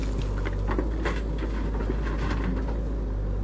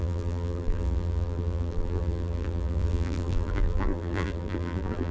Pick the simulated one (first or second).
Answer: second